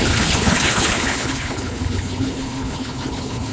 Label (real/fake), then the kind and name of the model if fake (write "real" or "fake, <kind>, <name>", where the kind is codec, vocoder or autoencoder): fake, codec, HILCodec